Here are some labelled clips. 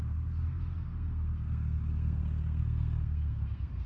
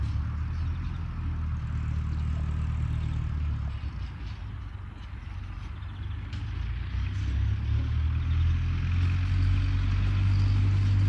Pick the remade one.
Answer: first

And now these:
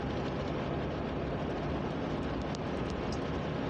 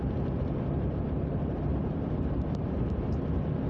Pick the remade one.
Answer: second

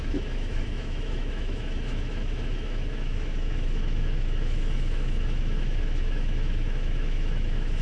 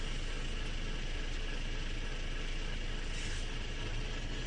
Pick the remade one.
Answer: first